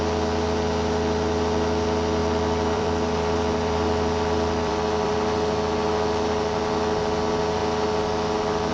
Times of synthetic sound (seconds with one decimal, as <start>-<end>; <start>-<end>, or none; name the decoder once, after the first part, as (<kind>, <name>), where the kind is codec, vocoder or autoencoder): 2.2-5.1 (vocoder, BigVGAN v2)

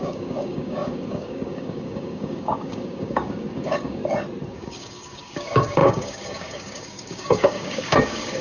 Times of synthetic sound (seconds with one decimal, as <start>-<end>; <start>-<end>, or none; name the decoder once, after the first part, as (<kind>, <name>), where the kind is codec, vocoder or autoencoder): 0.0-4.0 (codec, DAC); 4.5-8.4

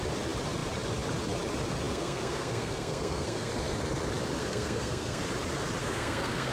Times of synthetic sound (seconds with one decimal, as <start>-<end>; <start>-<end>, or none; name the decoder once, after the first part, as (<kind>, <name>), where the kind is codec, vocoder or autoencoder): 1.9-3.5 (codec, SNAC); 4.4-5.2; 5.8-6.5

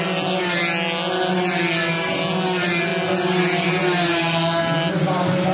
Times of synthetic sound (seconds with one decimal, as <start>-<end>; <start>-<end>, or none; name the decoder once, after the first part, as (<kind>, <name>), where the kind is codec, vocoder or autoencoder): none